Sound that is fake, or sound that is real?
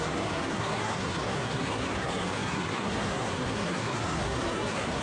fake